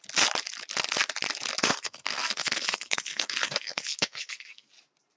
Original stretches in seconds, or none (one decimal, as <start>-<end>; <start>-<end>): 0.0-1.6; 4.7-5.2